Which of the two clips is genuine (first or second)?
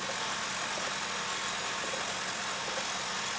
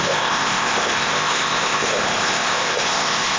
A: first